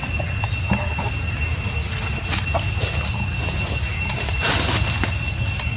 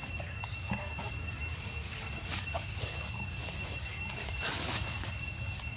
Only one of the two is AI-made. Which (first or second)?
second